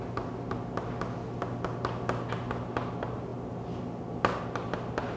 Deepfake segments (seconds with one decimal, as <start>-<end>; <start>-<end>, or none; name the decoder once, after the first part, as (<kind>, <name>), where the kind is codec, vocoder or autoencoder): none